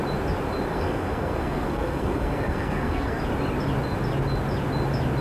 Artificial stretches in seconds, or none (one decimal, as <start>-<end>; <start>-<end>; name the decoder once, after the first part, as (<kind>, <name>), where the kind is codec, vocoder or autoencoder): 0.7-3.2 (codec, SNAC)

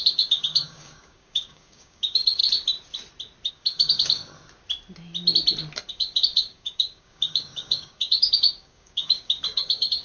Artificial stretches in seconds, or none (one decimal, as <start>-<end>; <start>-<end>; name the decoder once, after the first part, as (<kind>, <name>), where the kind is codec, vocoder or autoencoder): 0.0-2.4 (codec, DAC); 3.5-4.2; 5.9-10.0

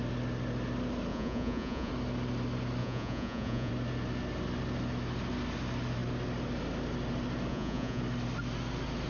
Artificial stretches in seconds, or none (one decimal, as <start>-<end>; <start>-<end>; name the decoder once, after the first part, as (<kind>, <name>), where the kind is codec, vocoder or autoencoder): 1.1-1.9 (vocoder, Vocos); 2.8-3.7; 7.5-8.0

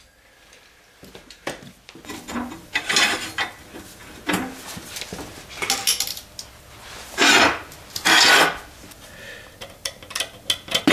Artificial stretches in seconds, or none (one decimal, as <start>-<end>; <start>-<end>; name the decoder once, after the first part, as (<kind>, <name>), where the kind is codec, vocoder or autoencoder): none

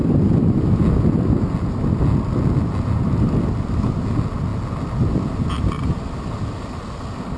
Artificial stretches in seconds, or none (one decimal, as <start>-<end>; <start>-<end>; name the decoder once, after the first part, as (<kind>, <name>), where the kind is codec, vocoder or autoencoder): none

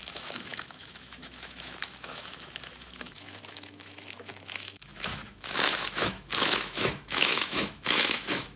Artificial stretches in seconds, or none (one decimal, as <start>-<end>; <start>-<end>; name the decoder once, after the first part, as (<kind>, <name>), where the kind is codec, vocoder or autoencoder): 0.0-8.6 (autoencoder, DAC-VAE)

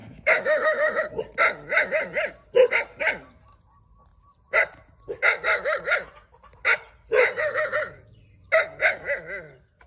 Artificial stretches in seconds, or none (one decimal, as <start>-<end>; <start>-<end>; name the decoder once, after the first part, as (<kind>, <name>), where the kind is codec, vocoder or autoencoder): 0.0-1.0 (autoencoder, DAC-VAE)